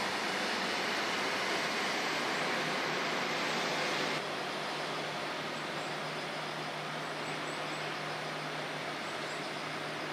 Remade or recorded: recorded